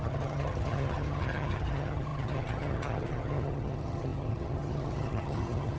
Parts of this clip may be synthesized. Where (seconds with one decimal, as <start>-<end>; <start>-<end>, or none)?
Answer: 0.0-5.8